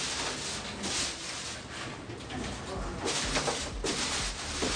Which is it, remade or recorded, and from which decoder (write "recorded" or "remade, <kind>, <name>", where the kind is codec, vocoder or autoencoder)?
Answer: recorded